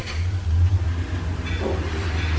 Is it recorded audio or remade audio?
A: recorded